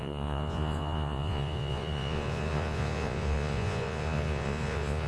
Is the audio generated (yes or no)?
yes